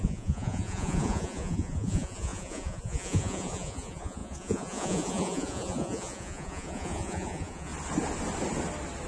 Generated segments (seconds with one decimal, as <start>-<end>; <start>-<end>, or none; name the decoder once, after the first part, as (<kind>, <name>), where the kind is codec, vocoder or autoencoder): 0.0-7.7 (vocoder, Vocos)